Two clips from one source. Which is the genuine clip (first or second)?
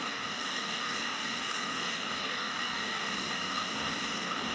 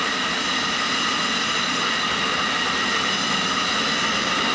second